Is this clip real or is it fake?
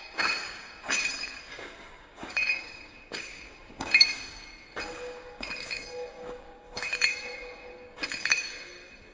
fake